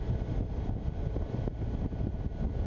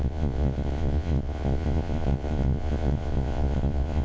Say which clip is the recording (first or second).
first